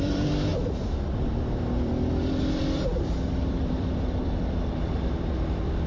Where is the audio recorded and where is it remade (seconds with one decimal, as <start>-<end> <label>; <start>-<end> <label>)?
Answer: 0.0-5.9 remade